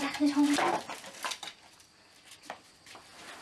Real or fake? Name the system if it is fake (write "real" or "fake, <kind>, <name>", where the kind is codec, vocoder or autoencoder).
real